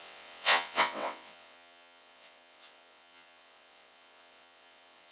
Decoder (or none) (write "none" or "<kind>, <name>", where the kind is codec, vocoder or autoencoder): vocoder, WaveNeXt